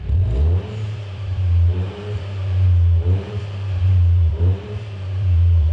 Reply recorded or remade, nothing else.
remade